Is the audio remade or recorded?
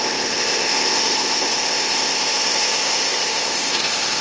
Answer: remade